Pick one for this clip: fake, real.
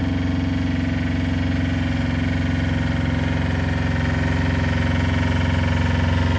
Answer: real